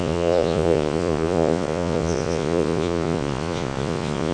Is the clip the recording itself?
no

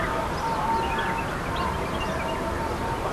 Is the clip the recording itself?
yes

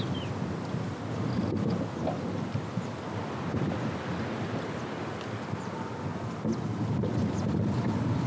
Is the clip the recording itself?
yes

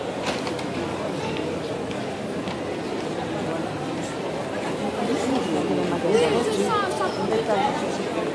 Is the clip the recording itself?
yes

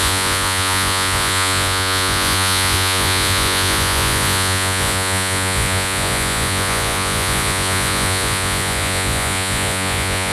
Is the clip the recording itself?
no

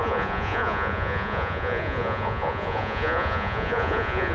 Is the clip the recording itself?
no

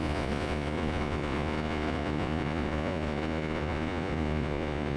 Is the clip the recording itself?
no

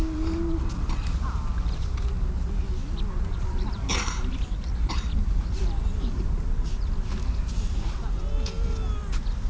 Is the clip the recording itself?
yes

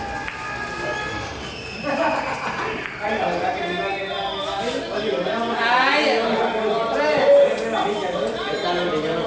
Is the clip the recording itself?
yes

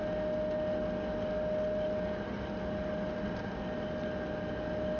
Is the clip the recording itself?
yes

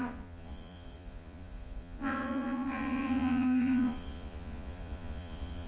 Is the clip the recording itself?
no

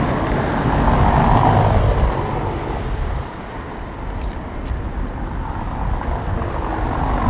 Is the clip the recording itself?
yes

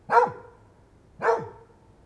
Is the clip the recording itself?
yes